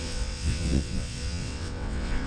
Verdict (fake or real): fake